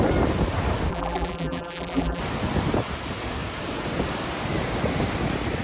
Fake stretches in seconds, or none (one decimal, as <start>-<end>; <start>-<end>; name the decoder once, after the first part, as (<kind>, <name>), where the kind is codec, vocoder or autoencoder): 0.9-2.2 (vocoder, BigVGAN v2)

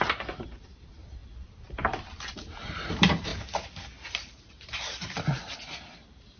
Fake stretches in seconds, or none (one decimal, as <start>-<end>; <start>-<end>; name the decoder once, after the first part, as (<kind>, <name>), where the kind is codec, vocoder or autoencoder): 0.0-1.2 (vocoder, BigVGAN v2); 2.9-3.3; 4.1-5.4

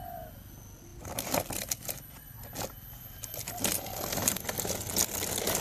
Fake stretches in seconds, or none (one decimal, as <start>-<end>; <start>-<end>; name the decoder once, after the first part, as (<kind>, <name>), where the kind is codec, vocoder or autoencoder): 0.9-4.3 (vocoder, BigVGAN v2)

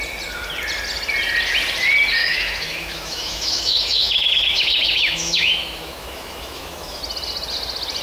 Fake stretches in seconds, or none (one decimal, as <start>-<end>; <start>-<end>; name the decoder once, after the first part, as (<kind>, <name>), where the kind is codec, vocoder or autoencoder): 2.2-7.0 (autoencoder, DAC-VAE)

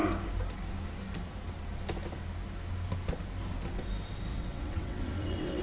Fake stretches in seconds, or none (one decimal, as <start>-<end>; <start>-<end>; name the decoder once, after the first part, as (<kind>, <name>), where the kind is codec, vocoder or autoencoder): 4.3-5.6 (vocoder, WaveNeXt)

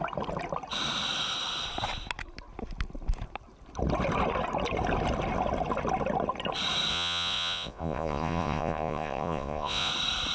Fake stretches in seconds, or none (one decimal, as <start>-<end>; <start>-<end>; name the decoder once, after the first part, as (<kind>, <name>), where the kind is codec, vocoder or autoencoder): 6.9-9.9 (vocoder, Vocos)

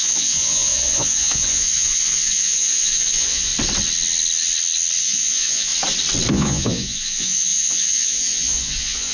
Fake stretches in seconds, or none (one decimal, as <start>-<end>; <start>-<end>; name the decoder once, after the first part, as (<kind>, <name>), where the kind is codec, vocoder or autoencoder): 0.0-3.5 (vocoder, Vocos); 5.0-5.7; 6.3-9.1

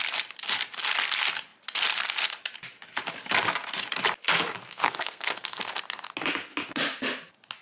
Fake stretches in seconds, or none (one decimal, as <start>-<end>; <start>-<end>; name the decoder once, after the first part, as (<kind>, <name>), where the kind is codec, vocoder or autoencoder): 4.6-5.8 (codec, SNAC)